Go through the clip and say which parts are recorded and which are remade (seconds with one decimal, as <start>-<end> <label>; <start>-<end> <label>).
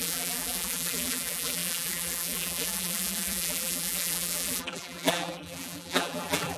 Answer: 0.0-6.6 remade